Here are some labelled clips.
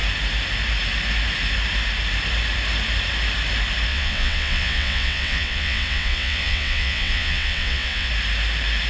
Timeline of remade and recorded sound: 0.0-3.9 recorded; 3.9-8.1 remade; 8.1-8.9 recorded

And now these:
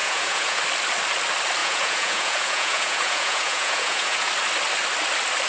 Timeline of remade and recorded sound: 0.0-0.6 remade; 0.6-1.6 recorded; 1.6-4.3 remade; 4.3-5.5 recorded

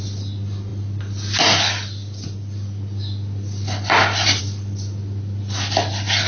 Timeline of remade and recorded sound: 0.0-6.3 recorded

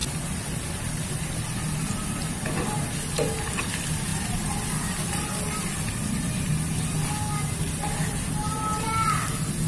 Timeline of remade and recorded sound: 0.0-9.7 recorded

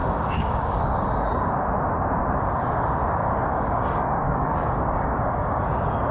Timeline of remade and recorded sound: 0.0-1.5 remade; 1.5-3.2 recorded; 3.2-5.6 remade; 5.6-6.1 recorded

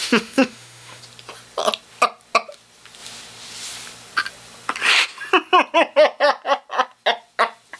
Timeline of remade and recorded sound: 0.0-1.0 remade; 1.0-7.8 recorded

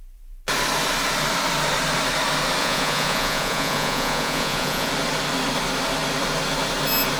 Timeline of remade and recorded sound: 0.0-2.6 recorded; 2.6-4.9 remade; 4.9-7.2 recorded

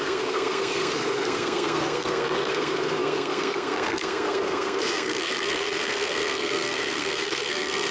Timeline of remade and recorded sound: 0.0-7.9 remade